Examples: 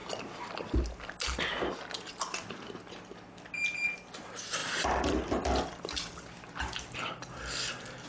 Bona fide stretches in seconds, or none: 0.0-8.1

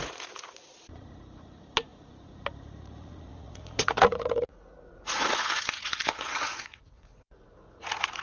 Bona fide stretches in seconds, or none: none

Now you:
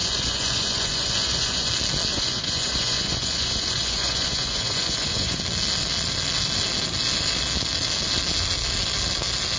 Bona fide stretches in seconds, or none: 1.7-2.1; 5.4-9.6

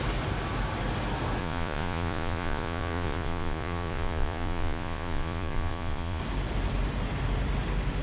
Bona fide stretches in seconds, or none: 0.0-1.4; 6.2-8.0